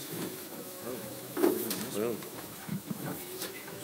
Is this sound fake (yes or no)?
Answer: yes